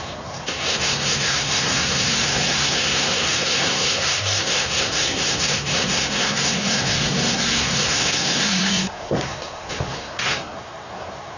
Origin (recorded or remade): remade